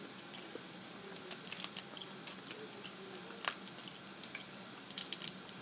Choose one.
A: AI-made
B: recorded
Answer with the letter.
B